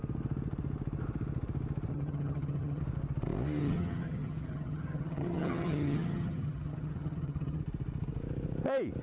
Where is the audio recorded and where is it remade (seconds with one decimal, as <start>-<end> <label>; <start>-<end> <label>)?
0.0-1.9 recorded; 1.9-2.8 remade; 2.8-3.6 recorded; 3.6-7.6 remade; 7.6-9.0 recorded